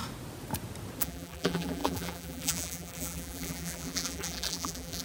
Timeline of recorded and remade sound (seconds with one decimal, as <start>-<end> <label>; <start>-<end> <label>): 0.0-1.0 recorded; 1.0-5.0 remade